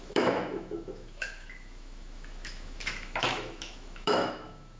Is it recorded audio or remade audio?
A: remade